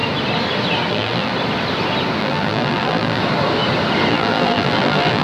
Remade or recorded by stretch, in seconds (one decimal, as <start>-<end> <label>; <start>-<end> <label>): 0.0-0.9 recorded; 0.9-1.3 remade; 1.3-2.2 recorded; 2.2-3.2 remade; 3.2-4.1 recorded; 4.1-5.2 remade

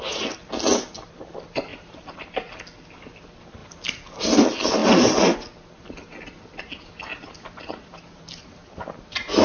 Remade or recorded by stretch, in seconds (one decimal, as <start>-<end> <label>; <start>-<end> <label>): 0.0-1.7 recorded; 1.7-2.2 remade; 2.2-3.6 recorded; 3.6-4.2 remade; 4.2-7.1 recorded; 7.1-8.8 remade; 8.8-9.4 recorded

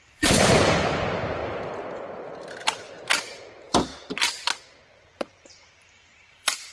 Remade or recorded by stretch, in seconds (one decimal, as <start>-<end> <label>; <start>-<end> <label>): 0.0-1.4 remade; 1.4-3.2 recorded; 3.2-3.9 remade; 3.9-5.0 recorded; 5.0-6.7 remade

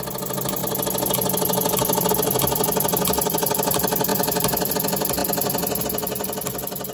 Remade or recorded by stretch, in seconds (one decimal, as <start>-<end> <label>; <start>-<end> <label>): 0.0-4.1 recorded; 4.1-4.7 remade; 4.7-6.9 recorded

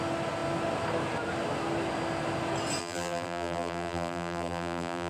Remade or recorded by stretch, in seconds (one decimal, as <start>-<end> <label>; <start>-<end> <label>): 0.0-2.8 recorded; 2.8-5.1 remade

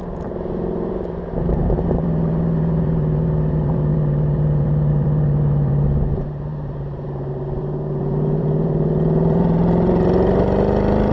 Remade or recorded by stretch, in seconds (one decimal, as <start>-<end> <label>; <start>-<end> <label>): 0.0-11.1 remade

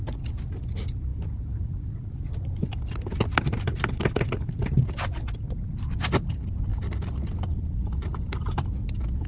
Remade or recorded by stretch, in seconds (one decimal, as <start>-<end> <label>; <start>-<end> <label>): 0.0-1.1 recorded; 1.1-2.7 remade; 2.7-3.1 recorded; 3.1-4.5 remade; 4.5-6.7 recorded; 6.7-8.5 remade; 8.5-9.3 recorded